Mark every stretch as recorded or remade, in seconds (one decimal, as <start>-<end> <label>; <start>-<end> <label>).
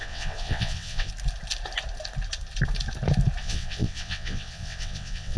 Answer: 0.0-1.1 remade; 1.1-3.4 recorded; 3.4-5.4 remade